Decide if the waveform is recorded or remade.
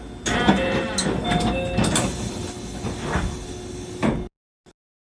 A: recorded